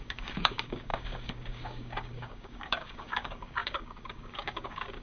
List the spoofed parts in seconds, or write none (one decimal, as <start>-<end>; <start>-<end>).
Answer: 0.0-5.0